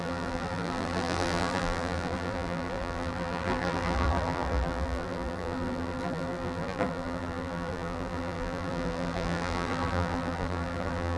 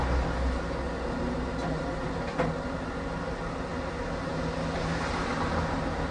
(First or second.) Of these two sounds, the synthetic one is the first